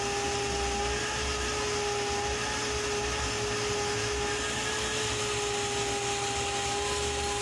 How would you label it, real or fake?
real